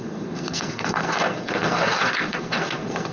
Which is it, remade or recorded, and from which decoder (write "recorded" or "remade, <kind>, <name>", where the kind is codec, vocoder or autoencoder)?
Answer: remade, codec, SNAC